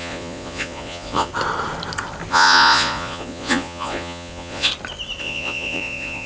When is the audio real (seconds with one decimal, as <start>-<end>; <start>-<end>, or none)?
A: 1.3-2.3; 4.7-5.2